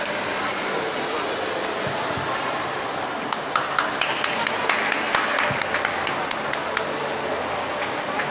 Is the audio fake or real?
real